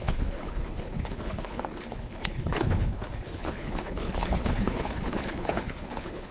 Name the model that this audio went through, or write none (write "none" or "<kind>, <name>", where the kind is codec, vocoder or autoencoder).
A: codec, HILCodec